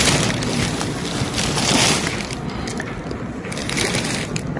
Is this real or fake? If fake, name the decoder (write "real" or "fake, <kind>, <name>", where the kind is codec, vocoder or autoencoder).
fake, vocoder, BigVGAN v2